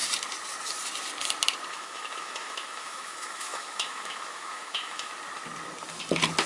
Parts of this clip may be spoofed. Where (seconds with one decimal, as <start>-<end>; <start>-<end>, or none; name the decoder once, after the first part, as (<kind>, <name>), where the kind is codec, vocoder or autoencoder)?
1.7-5.1 (autoencoder, DAC-VAE)